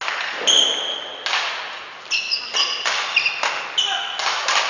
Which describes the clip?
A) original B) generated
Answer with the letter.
A